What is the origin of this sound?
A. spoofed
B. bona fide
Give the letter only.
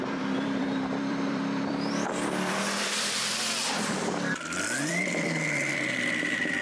A